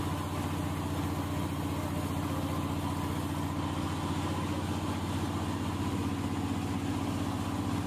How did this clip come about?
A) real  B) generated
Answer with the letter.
A